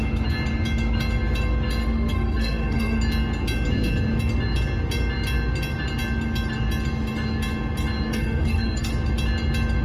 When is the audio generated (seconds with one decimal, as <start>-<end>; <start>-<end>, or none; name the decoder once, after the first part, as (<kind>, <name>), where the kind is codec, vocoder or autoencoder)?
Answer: 1.8-3.0 (codec, SNAC); 8.1-8.9